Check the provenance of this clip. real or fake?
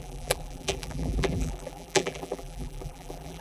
fake